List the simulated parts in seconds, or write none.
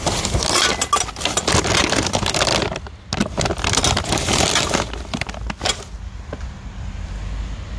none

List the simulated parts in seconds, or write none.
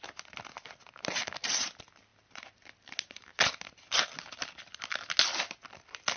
none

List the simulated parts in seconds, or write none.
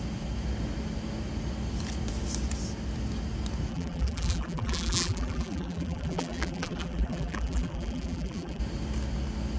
3.7-8.6 (vocoder, BigVGAN v2)